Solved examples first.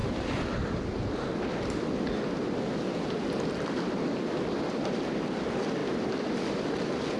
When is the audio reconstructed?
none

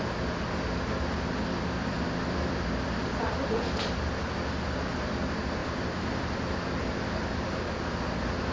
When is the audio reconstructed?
1.8-4.3 (vocoder, BigVGAN v2); 5.6-6.5

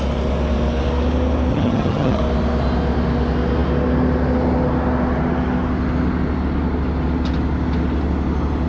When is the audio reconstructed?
1.5-2.2 (vocoder, HiFi-GAN)